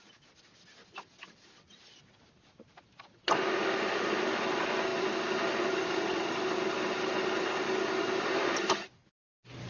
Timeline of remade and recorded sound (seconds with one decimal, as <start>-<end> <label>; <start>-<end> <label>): 0.0-9.7 recorded